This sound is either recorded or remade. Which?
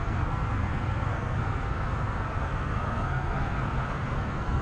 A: remade